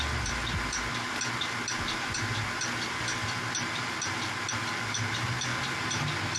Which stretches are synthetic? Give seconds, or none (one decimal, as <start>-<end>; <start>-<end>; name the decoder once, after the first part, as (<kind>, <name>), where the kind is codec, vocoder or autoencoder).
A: none